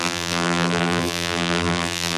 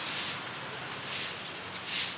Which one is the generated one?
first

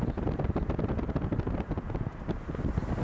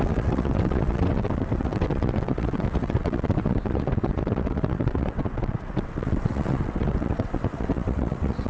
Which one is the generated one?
second